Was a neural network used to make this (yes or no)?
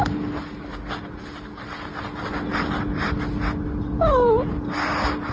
no